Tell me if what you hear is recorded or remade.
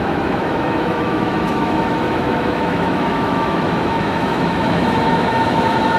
remade